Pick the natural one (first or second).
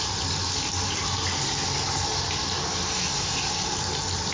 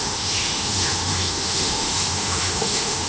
first